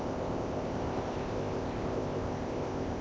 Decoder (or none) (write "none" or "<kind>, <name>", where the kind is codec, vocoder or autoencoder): codec, ZipCodec